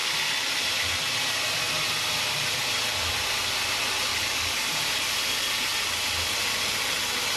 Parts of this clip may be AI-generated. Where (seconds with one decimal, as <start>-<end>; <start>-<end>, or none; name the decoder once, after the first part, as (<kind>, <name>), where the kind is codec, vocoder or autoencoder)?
4.1-4.7 (codec, DAC)